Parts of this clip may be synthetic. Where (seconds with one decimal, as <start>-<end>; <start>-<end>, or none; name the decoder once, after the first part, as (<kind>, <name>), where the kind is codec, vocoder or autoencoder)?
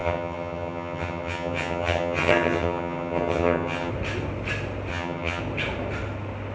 0.0-3.9 (vocoder, HiFi-GAN); 4.9-5.4